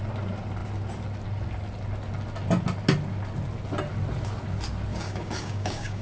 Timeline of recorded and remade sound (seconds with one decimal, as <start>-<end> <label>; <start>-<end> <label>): 0.0-4.9 recorded; 4.9-6.0 remade